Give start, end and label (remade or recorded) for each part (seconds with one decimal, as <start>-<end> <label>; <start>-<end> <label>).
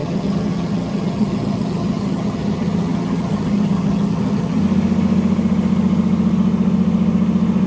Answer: 0.0-4.6 remade; 4.6-7.7 recorded